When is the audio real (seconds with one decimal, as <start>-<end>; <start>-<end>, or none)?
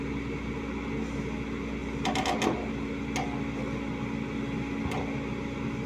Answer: 0.0-5.9